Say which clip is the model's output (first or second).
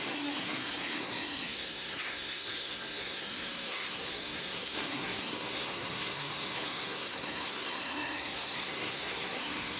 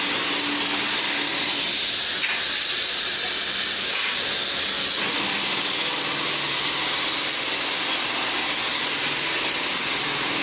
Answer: first